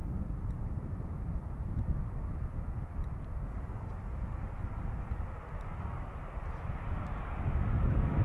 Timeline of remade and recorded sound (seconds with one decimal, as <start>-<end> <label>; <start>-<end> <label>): 0.0-8.2 recorded

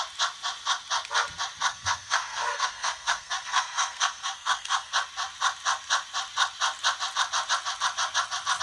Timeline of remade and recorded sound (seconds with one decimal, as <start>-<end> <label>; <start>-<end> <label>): 0.0-1.7 recorded; 1.7-4.9 remade; 4.9-8.6 recorded

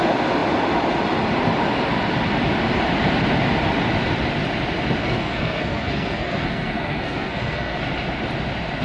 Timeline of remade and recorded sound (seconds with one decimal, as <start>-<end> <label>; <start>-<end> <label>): 0.0-5.0 recorded; 5.0-7.8 remade; 7.8-8.8 recorded

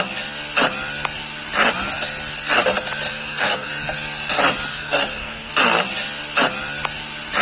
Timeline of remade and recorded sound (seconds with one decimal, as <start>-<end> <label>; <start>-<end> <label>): 0.0-3.1 recorded; 3.1-3.7 remade; 3.7-4.7 recorded; 4.7-5.5 remade; 5.5-7.4 recorded

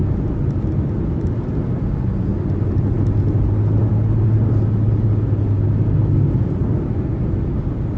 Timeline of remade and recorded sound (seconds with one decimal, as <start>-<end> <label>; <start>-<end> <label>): 0.0-8.0 recorded

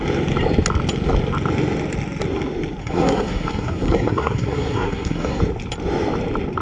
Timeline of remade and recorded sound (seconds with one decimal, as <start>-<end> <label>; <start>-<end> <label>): 0.0-2.8 recorded; 2.8-5.4 remade; 5.4-6.6 recorded